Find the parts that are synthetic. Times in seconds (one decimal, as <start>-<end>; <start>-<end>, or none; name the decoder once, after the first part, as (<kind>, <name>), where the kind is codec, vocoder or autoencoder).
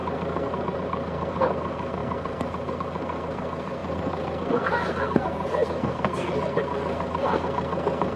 0.0-8.2 (codec, SNAC)